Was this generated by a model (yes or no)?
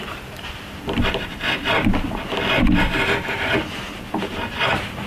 no